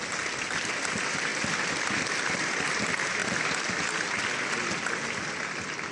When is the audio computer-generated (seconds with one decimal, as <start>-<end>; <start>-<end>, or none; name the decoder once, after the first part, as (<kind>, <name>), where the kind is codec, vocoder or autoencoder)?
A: none

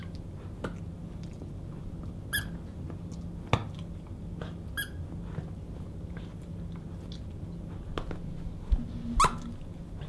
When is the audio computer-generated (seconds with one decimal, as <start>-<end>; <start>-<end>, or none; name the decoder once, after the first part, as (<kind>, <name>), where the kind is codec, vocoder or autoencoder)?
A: none